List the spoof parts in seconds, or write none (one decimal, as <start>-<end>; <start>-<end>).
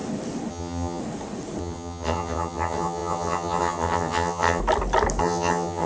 0.5-1.0; 1.6-4.6; 5.2-5.9